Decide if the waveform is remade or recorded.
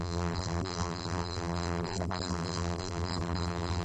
remade